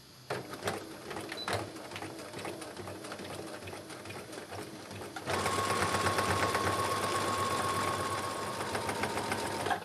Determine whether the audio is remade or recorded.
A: recorded